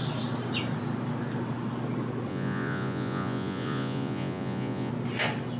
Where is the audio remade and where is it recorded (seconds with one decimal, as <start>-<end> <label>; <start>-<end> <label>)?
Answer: 0.0-2.3 recorded; 2.3-4.9 remade; 4.9-5.6 recorded